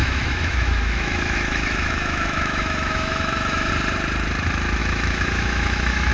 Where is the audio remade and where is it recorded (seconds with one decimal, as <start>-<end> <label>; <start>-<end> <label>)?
0.0-3.7 remade; 3.7-4.8 recorded; 4.8-6.1 remade